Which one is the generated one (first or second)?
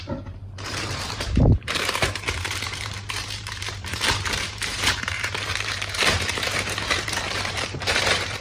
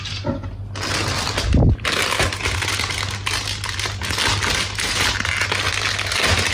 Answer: first